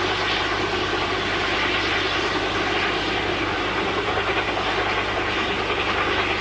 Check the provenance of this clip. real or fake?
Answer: real